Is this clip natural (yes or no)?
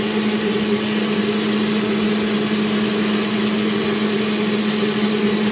yes